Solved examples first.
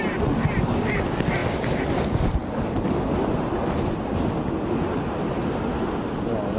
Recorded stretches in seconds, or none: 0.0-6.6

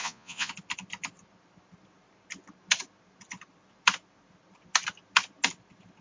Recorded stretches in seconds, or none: 0.5-6.0

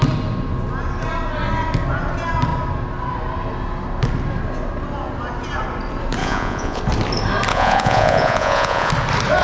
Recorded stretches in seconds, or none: 0.0-6.2; 6.8-7.5; 8.9-9.4

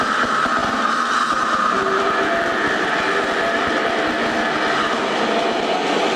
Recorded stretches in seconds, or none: 0.0-6.2